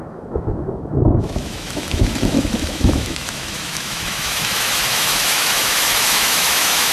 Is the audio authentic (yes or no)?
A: no